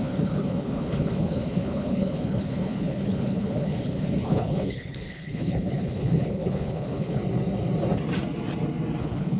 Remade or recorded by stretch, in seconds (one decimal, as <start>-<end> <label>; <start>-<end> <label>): 0.0-7.2 remade; 7.2-9.0 recorded; 9.0-9.4 remade